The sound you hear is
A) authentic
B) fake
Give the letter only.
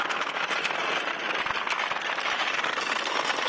A